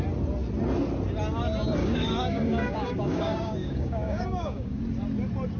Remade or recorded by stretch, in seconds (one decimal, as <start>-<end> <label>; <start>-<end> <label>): 0.0-1.8 recorded; 1.8-4.8 remade; 4.8-5.6 recorded